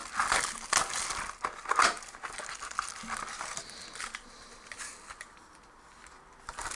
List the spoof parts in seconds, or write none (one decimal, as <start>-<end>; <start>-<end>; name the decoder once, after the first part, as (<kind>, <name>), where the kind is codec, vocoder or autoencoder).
none